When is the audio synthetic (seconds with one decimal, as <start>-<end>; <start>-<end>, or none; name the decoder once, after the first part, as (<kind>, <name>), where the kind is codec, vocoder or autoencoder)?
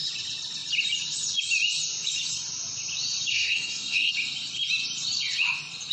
3.3-4.1 (codec, SNAC)